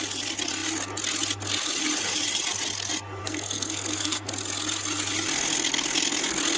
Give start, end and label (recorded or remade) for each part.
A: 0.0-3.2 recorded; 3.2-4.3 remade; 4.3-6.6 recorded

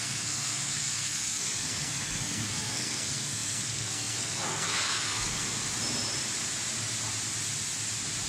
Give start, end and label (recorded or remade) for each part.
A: 0.0-5.6 remade; 5.6-8.3 recorded

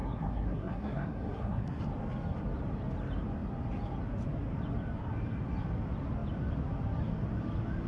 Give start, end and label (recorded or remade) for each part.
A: 0.0-1.8 remade; 1.8-7.9 recorded

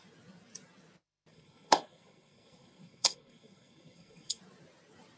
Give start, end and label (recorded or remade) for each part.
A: 0.0-1.3 recorded; 1.3-4.4 remade; 4.4-5.2 recorded